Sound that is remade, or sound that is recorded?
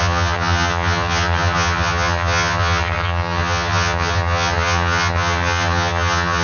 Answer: remade